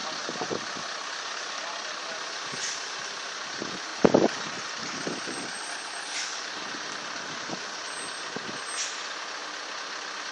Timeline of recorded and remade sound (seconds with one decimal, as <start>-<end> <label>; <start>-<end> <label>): 0.0-3.9 recorded; 3.9-7.5 remade; 7.5-10.3 recorded